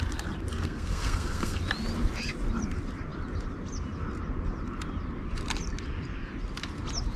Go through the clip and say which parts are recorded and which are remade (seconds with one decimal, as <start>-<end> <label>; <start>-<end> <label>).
0.0-0.5 recorded; 0.5-1.6 remade; 1.6-7.2 recorded